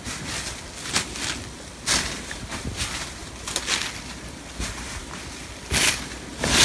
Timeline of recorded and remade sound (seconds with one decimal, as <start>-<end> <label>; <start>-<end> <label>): 0.0-6.6 recorded